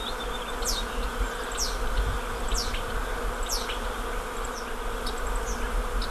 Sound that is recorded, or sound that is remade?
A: recorded